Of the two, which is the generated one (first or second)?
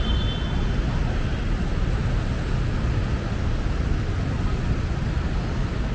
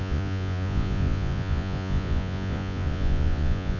second